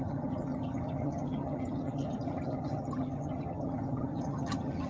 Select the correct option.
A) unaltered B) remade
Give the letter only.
B